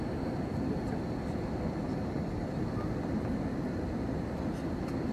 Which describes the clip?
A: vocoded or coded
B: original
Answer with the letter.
B